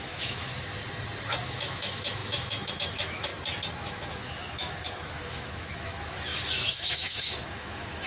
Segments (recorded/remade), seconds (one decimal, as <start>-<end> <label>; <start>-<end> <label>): 0.0-0.5 remade; 0.5-1.4 recorded; 1.4-3.3 remade; 3.3-3.8 recorded; 3.8-8.1 remade